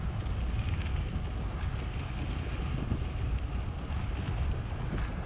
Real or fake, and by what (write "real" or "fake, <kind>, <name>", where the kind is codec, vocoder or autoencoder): real